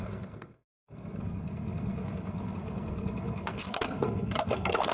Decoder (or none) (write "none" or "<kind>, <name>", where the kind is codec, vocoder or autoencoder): codec, SNAC